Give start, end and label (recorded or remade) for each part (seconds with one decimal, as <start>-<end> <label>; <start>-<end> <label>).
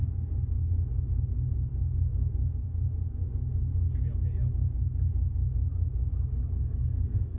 0.0-6.6 recorded; 6.6-7.4 remade